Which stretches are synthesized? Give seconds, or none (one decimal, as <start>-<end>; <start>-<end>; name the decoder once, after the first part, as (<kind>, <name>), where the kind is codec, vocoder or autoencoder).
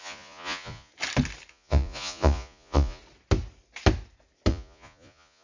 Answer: 0.0-0.9 (vocoder, Vocos); 1.5-3.0; 4.5-5.4